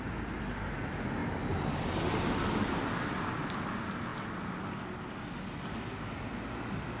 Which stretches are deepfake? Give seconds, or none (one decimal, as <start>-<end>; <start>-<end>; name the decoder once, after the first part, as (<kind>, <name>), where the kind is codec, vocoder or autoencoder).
none